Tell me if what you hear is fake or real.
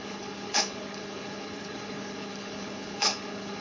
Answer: fake